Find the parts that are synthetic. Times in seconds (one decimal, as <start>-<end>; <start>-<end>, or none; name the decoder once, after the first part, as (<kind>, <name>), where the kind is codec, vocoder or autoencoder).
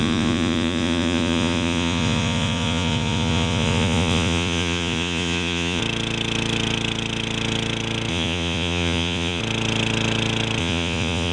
0.0-5.8 (vocoder, Vocos); 8.1-9.4; 10.6-11.3